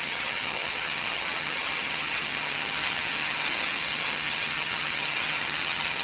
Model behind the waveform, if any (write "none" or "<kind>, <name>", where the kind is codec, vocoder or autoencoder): vocoder, HiFi-GAN